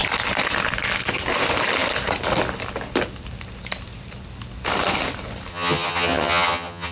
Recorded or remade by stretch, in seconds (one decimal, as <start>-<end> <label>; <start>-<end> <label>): 0.0-5.5 recorded; 5.5-6.9 remade